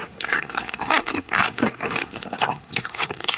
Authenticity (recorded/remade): remade